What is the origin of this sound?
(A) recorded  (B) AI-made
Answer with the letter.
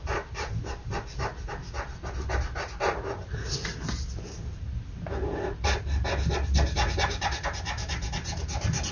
A